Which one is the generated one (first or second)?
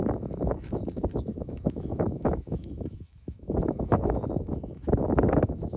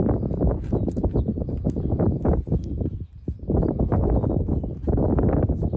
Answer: first